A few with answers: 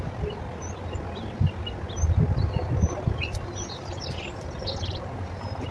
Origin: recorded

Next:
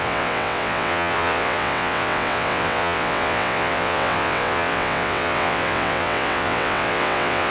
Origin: remade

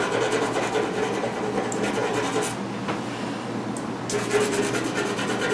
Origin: recorded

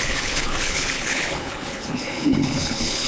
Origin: remade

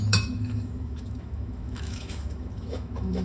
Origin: remade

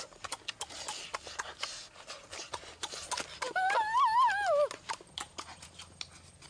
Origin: recorded